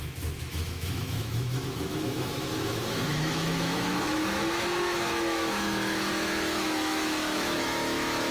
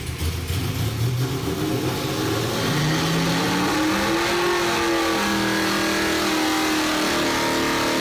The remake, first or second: first